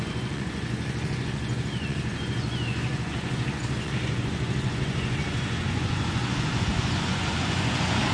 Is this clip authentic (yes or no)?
no